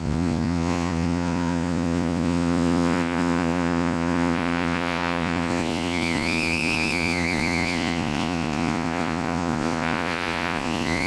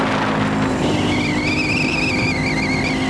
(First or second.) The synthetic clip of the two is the first